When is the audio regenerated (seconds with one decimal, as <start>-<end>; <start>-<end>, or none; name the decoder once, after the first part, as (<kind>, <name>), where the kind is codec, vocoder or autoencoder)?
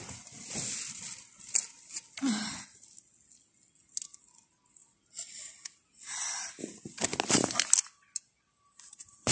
none